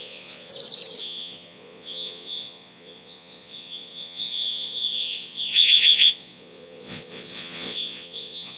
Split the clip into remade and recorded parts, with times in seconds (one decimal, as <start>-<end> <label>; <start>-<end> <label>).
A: 0.0-0.5 remade; 0.5-1.0 recorded; 1.0-8.6 remade